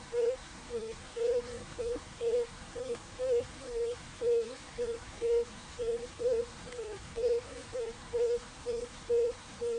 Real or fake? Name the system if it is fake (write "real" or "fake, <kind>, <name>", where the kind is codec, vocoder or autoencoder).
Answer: fake, codec, SNAC